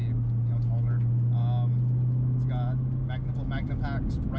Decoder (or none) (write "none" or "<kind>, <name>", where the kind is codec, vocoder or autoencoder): none